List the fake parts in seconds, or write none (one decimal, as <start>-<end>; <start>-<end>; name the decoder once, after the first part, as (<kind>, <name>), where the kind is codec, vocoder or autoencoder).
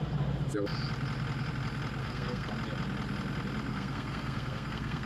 2.0-2.5 (codec, SNAC); 3.7-5.1